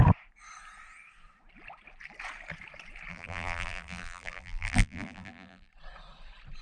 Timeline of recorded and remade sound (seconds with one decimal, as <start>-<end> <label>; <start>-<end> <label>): 0.0-3.1 recorded; 3.1-5.7 remade; 5.7-6.6 recorded